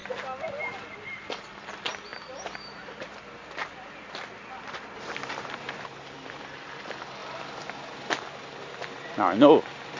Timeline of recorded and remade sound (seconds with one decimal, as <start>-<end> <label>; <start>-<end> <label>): 0.0-2.1 recorded; 2.1-3.0 remade; 3.0-10.0 recorded